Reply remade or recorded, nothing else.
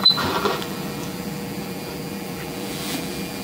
remade